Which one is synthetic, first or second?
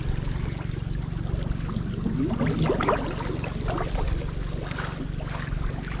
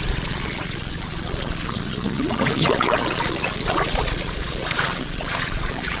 second